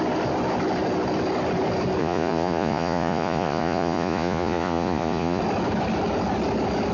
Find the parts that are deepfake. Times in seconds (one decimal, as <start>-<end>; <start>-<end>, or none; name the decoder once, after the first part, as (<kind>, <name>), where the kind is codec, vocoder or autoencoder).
2.0-5.4 (vocoder, Vocos)